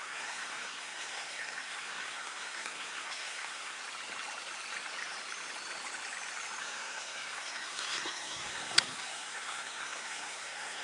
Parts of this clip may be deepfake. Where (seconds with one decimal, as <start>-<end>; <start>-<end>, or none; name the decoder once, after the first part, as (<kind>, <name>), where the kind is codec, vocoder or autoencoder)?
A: 0.0-3.8 (codec, SNAC); 6.6-10.8